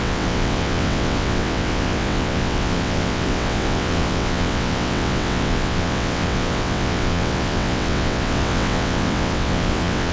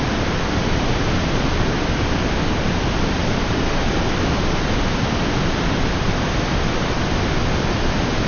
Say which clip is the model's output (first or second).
first